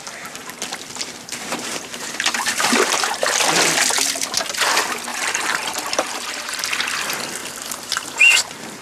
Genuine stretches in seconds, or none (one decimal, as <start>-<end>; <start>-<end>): 0.0-0.4; 3.3-5.1; 6.6-7.4; 8.3-8.8